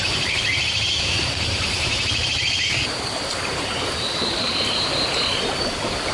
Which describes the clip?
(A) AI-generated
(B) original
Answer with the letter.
A